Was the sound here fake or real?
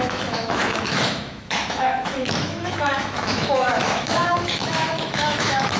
fake